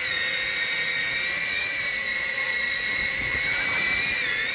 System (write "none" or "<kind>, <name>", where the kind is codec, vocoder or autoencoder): vocoder, Vocos